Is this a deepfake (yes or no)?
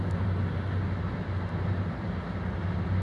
no